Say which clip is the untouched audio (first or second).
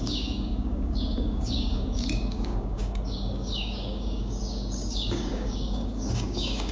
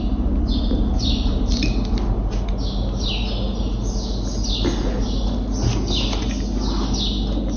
second